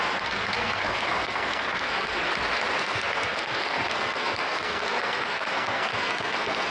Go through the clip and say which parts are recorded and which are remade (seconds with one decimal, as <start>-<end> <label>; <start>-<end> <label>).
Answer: 0.0-2.3 remade; 2.3-2.8 recorded; 2.8-6.7 remade